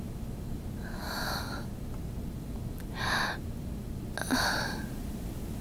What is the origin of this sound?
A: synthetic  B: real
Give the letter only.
B